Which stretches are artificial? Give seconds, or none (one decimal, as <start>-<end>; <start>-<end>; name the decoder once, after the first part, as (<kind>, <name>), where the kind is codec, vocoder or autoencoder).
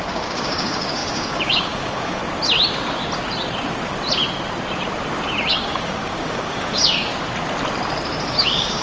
0.0-2.2 (codec, DAC); 5.5-7.1; 8.4-8.8